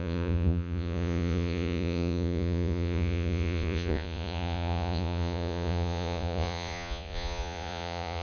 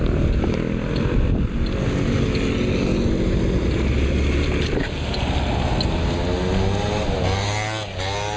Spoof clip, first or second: first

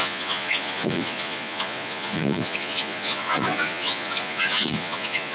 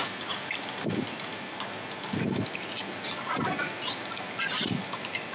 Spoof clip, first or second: first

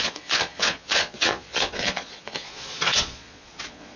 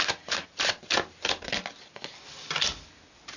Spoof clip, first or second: first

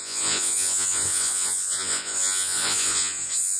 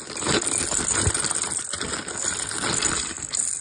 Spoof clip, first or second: first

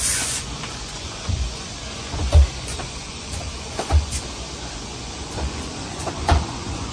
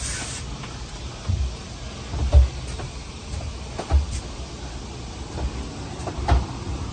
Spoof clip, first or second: first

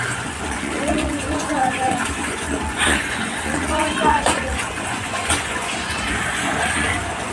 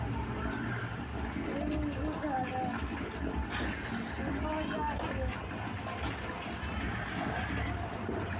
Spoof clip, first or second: first